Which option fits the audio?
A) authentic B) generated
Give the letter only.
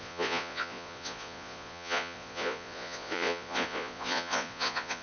B